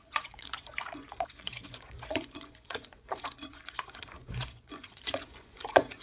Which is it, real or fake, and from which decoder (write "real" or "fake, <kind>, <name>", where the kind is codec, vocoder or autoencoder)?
fake, vocoder, Vocos